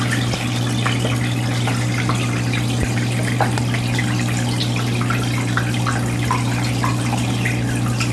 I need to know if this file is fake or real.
real